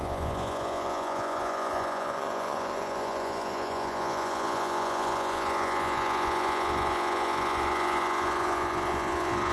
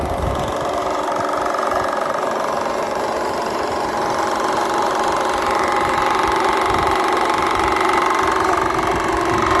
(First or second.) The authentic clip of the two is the second